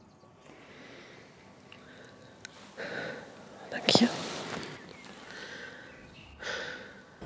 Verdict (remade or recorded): recorded